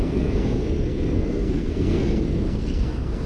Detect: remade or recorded remade